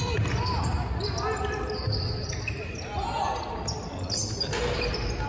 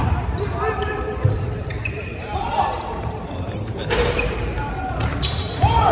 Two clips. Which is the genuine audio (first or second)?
first